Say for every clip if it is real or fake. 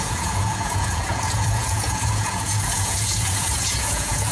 fake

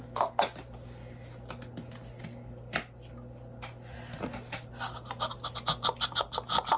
real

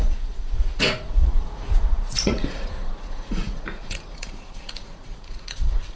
fake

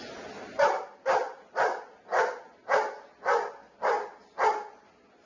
real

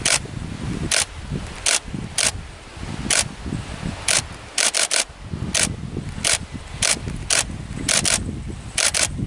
real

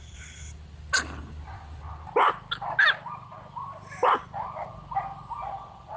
real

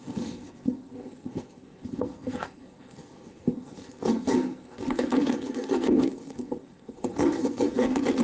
fake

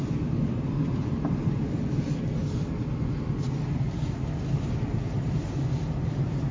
real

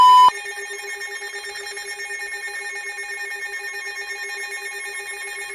real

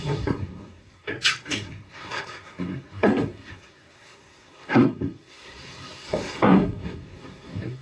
fake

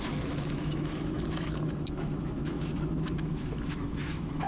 fake